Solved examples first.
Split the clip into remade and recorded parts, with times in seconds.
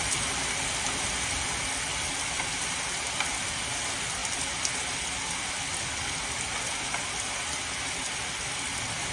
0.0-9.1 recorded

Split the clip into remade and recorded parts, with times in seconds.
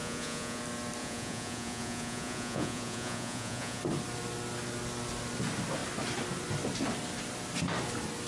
0.0-0.6 remade; 0.6-1.0 recorded; 1.0-3.8 remade; 3.8-8.3 recorded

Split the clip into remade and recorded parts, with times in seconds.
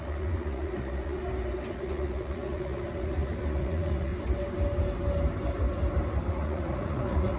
0.0-1.2 remade; 1.2-1.7 recorded; 1.7-4.1 remade; 4.1-6.3 recorded; 6.3-7.4 remade